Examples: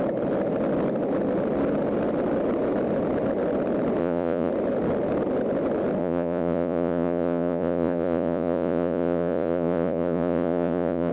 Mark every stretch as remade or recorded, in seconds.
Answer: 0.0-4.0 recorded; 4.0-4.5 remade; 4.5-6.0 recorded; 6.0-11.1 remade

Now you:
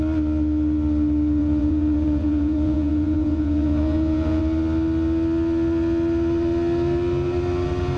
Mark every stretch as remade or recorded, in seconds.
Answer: 0.0-1.4 recorded; 1.4-4.4 remade; 4.4-8.0 recorded

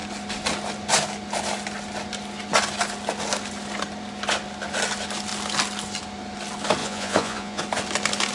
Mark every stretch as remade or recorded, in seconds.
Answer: 0.0-6.8 recorded; 6.8-7.6 remade; 7.6-8.3 recorded

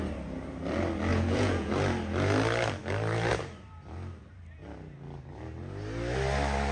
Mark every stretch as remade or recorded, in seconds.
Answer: 0.0-1.1 recorded; 1.1-1.7 remade; 1.7-6.7 recorded